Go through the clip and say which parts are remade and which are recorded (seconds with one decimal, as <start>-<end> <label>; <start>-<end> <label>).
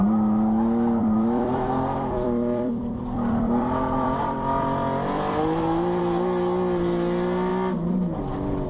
0.0-1.0 recorded; 1.0-6.0 remade; 6.0-8.7 recorded